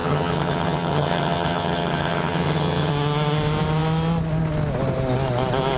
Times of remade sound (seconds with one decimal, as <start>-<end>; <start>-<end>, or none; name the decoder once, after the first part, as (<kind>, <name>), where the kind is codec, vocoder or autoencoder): 0.0-2.9 (vocoder, HiFi-GAN)